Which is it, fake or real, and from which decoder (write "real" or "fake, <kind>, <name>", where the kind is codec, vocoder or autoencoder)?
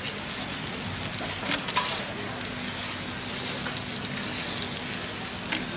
real